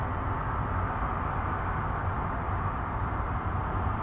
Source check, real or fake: real